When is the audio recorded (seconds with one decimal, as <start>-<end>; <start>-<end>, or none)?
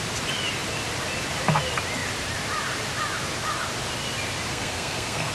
0.0-4.5